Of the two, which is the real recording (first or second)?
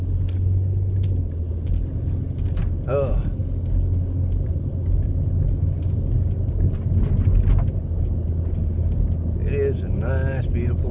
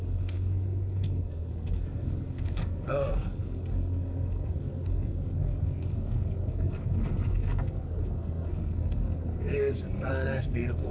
first